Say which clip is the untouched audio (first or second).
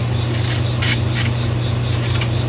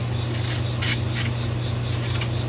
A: second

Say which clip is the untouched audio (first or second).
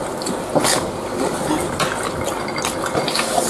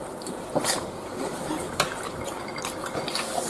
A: first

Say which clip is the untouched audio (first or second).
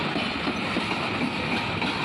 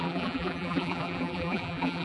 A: first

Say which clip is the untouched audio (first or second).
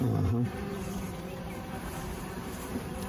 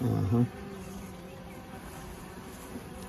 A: second